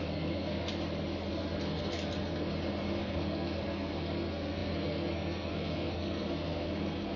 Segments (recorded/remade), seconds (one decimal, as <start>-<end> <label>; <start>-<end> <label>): 0.0-0.7 remade; 0.7-1.3 recorded; 1.3-2.5 remade; 2.5-3.0 recorded; 3.0-7.2 remade